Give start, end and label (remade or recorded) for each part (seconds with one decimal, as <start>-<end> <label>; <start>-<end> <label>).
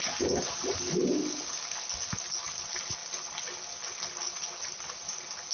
0.0-5.5 recorded